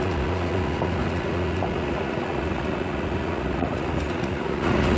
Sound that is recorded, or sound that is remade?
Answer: remade